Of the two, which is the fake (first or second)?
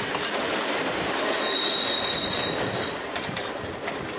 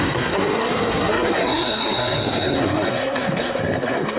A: second